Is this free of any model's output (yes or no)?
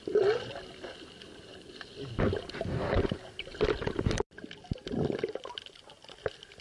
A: yes